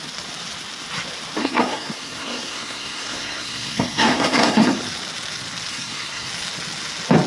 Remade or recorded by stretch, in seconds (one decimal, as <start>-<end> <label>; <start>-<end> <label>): 0.0-1.4 recorded; 1.4-4.8 remade; 4.8-5.7 recorded; 5.7-6.3 remade; 6.3-7.3 recorded

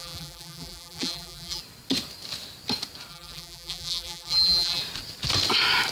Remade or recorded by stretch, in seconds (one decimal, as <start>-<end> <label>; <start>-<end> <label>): 0.0-1.6 remade; 1.6-3.1 recorded; 3.1-4.8 remade; 4.8-5.9 recorded

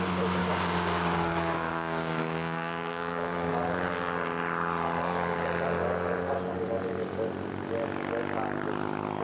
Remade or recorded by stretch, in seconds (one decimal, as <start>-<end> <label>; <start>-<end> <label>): 0.0-0.4 recorded; 0.4-3.5 remade; 3.5-9.2 recorded

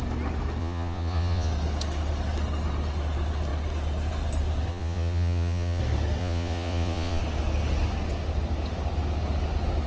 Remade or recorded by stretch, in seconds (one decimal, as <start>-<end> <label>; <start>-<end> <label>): 0.0-0.6 recorded; 0.6-1.5 remade; 1.5-4.7 recorded; 4.7-5.8 remade; 5.8-6.2 recorded; 6.2-7.2 remade; 7.2-9.9 recorded

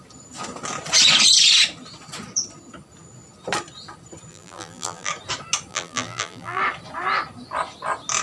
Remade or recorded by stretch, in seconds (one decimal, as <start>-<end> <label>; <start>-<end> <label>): 0.0-4.3 recorded; 4.3-5.1 remade; 5.1-5.7 recorded; 5.7-6.6 remade; 6.6-8.2 recorded

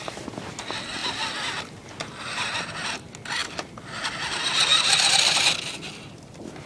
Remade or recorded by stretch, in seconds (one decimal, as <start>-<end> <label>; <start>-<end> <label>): 0.0-3.4 remade; 3.4-4.1 recorded; 4.1-6.7 remade

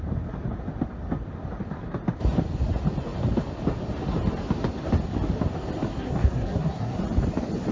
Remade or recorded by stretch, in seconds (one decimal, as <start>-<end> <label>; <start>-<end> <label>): 0.0-5.9 recorded; 5.9-7.0 remade; 7.0-7.7 recorded